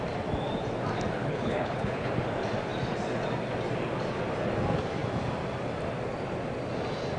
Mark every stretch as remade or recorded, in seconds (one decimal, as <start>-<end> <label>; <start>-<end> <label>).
0.0-1.2 recorded; 1.2-2.1 remade; 2.1-7.2 recorded